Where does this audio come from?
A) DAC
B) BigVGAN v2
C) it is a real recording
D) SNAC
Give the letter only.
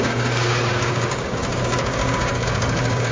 A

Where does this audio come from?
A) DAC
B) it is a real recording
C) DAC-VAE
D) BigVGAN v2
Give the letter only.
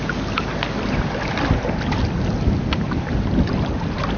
B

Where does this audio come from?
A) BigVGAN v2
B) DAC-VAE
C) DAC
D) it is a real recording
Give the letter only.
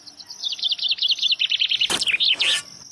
D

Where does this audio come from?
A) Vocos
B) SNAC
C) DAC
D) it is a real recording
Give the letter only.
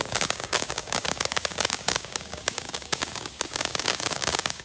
C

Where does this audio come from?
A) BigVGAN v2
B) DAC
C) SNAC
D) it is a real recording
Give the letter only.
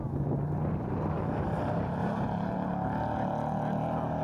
D